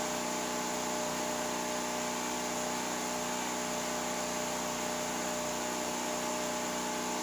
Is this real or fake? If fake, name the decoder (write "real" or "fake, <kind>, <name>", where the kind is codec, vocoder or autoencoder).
real